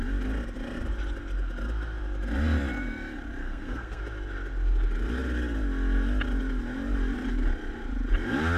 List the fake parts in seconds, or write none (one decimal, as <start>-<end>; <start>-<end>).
3.4-4.0